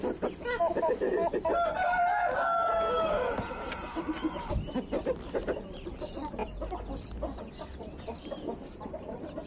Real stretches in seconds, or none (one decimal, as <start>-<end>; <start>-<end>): 0.0-2.1; 3.3-9.5